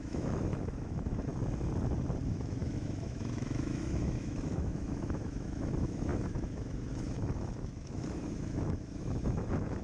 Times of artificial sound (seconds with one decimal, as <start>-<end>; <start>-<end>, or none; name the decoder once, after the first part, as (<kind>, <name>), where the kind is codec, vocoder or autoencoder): 0.0-1.3 (autoencoder, DAC-VAE); 2.2-9.8